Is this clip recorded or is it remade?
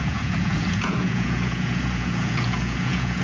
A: remade